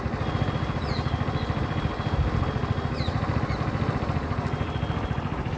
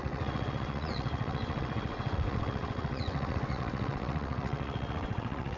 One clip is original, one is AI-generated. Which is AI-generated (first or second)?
second